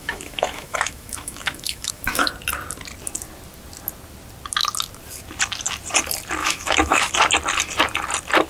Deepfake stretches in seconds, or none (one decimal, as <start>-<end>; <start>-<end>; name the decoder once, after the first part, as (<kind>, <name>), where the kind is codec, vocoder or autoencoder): 0.0-2.3 (autoencoder, DAC-VAE); 6.4-7.1